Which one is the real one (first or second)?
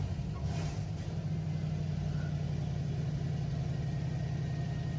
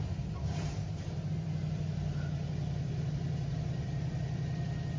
first